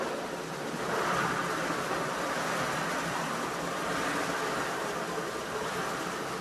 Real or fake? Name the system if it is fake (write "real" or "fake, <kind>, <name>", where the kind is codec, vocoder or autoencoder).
real